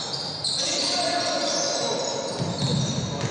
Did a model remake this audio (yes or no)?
no